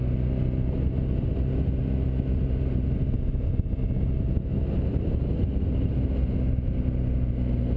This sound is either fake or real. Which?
real